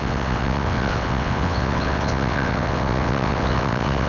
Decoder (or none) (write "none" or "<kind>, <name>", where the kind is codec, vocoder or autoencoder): vocoder, WaveNeXt